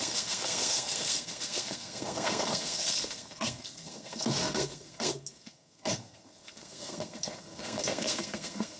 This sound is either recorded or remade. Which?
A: remade